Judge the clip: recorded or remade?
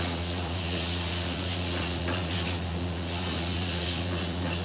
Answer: remade